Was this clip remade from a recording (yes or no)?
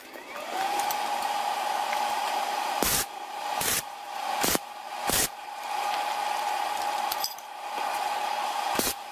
yes